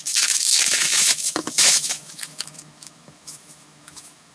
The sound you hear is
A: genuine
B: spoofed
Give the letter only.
B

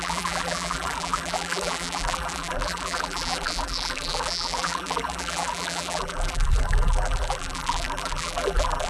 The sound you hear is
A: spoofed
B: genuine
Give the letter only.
A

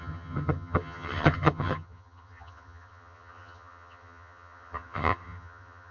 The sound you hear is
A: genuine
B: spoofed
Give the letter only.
B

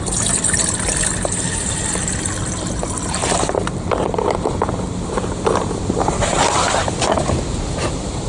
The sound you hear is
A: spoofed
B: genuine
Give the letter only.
B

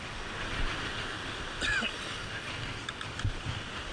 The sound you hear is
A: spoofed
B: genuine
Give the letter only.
B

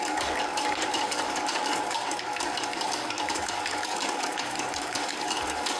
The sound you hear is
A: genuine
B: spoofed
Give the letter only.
B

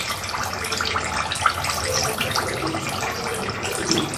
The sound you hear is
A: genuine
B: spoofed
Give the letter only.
B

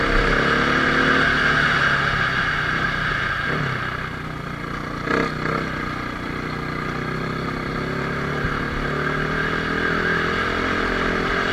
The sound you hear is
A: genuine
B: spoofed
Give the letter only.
A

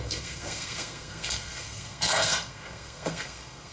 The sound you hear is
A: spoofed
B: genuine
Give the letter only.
A